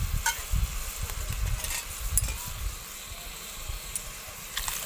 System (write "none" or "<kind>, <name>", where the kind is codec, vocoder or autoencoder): none